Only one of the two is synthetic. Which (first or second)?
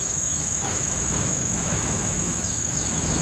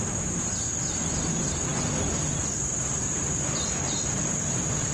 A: first